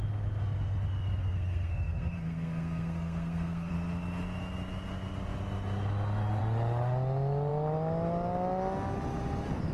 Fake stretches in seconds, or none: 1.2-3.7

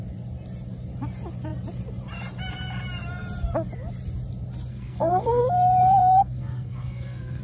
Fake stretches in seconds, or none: 4.7-5.4; 6.0-7.4

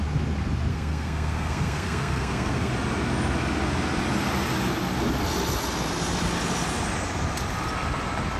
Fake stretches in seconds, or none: 0.7-2.7